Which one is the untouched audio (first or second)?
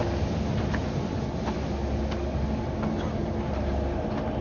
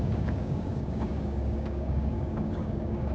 first